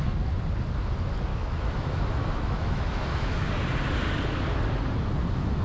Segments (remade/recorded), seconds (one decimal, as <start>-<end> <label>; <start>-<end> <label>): 0.0-1.3 recorded; 1.3-3.5 remade; 3.5-5.6 recorded